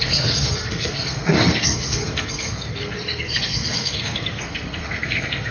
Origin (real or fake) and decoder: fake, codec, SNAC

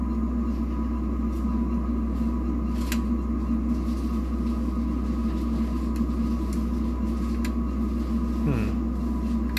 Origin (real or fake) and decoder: real